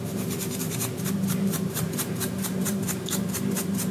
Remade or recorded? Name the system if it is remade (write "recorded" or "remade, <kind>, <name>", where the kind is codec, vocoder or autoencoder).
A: remade, vocoder, BigVGAN v2